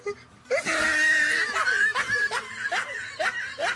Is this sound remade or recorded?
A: recorded